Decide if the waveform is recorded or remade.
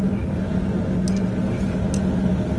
recorded